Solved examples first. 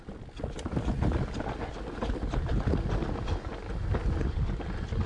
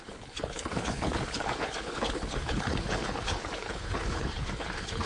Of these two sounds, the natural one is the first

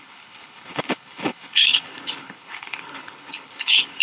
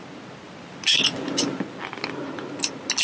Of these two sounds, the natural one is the second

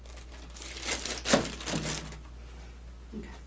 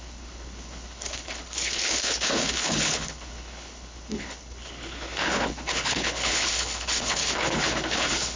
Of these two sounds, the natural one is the first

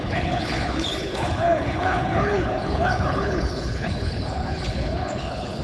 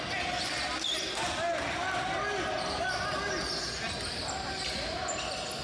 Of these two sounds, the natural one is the second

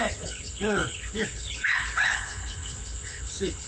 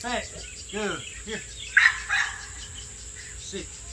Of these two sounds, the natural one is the second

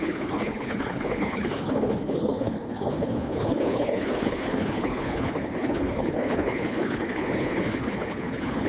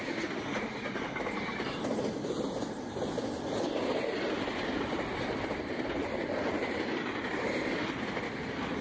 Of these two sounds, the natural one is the second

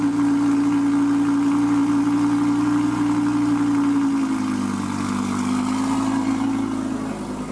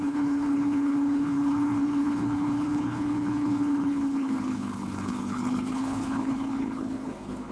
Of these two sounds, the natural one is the first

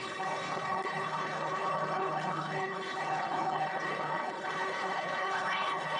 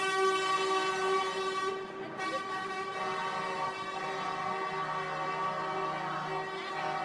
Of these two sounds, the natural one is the second